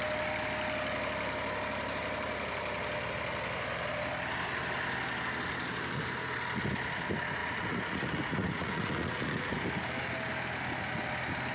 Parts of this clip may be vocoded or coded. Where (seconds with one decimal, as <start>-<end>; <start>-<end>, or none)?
7.4-9.5